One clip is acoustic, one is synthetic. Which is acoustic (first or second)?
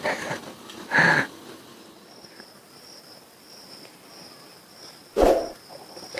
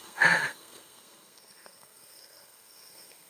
first